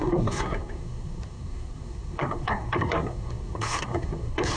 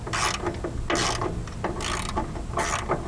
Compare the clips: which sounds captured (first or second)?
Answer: second